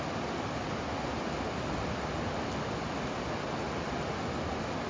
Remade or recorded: recorded